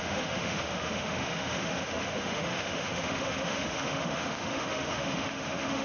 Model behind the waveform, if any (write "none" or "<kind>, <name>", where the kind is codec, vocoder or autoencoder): autoencoder, DAC-VAE